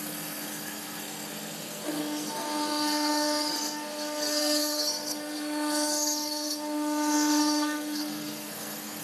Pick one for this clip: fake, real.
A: fake